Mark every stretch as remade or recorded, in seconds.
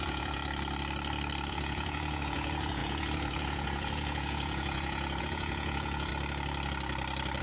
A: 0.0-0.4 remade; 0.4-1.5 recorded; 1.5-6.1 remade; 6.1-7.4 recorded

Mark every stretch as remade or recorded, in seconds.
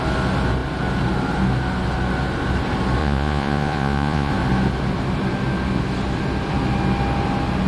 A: 0.0-3.0 recorded; 3.0-4.3 remade; 4.3-7.7 recorded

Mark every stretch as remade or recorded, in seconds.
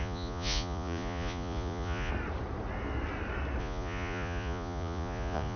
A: 0.0-2.1 remade; 2.1-3.6 recorded; 3.6-5.6 remade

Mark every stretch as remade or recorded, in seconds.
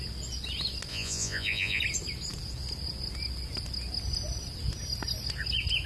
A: 0.0-0.9 recorded; 0.9-1.8 remade; 1.8-5.9 recorded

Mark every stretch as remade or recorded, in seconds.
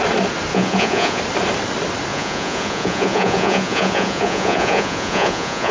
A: 0.0-0.5 recorded; 0.5-1.2 remade; 1.2-2.1 recorded; 2.1-5.7 remade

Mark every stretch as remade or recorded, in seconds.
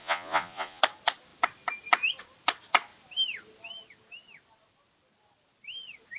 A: 0.0-0.8 remade; 0.8-6.2 recorded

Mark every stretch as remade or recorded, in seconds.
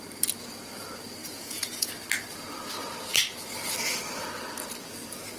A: 0.0-1.2 recorded; 1.2-1.9 remade; 1.9-5.4 recorded